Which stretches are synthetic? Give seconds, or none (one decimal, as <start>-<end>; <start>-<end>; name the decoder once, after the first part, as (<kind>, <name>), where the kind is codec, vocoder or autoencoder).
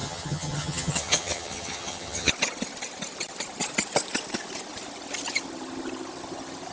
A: 0.0-2.3 (vocoder, HiFi-GAN)